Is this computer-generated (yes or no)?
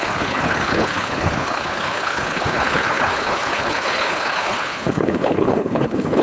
yes